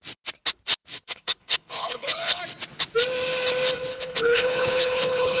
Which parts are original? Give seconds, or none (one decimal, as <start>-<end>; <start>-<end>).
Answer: 0.0-0.9; 2.4-3.9